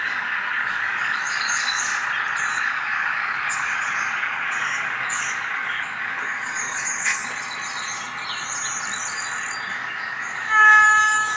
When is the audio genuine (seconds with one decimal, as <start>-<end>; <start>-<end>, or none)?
1.9-2.5; 7.2-9.7